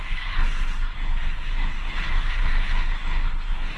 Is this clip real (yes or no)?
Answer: no